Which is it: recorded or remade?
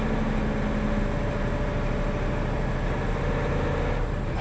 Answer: recorded